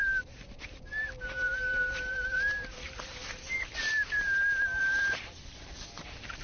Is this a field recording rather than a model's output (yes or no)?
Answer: no